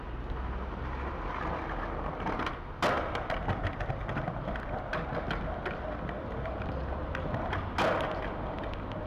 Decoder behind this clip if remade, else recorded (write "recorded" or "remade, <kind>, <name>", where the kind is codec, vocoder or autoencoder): recorded